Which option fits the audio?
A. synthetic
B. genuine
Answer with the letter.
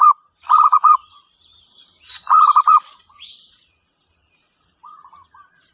A